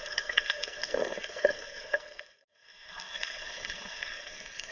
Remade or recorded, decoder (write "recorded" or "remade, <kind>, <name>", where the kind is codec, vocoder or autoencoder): remade, codec, SNAC